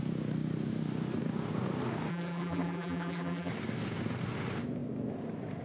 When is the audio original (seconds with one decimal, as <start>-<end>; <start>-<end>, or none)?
0.0-2.1; 3.5-5.6